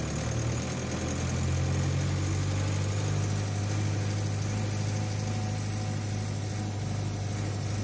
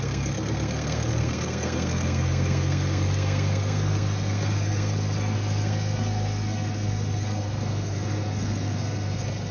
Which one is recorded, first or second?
first